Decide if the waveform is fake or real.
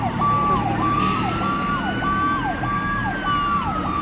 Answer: real